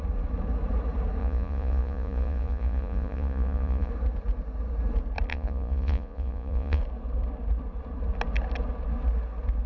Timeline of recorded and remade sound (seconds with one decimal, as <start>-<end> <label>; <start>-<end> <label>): 0.0-1.2 recorded; 1.2-3.9 remade; 3.9-5.3 recorded; 5.3-6.8 remade; 6.8-9.7 recorded